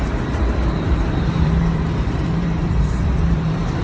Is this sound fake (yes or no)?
yes